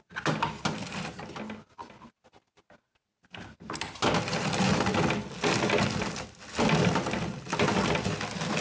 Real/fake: real